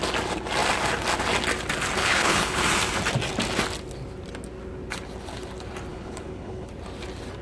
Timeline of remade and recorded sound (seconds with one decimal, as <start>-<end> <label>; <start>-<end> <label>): 0.0-2.0 recorded; 2.0-2.6 remade; 2.6-5.9 recorded; 5.9-6.7 remade; 6.7-7.4 recorded